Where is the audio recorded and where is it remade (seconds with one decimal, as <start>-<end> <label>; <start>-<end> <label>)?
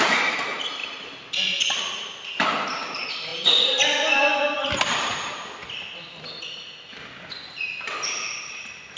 0.0-9.0 recorded